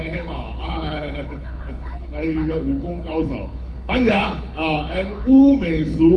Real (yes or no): no